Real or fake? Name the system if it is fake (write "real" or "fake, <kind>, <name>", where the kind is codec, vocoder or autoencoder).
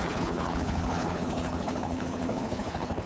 fake, codec, HILCodec